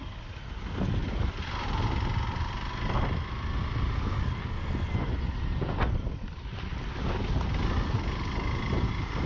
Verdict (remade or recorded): recorded